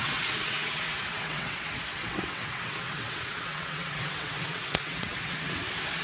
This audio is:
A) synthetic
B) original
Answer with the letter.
A